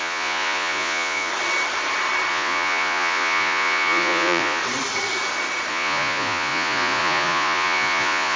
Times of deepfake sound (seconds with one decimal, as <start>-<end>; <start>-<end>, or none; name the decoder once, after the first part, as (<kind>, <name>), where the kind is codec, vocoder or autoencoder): 0.0-1.3 (vocoder, Vocos); 2.3-4.6; 5.7-8.4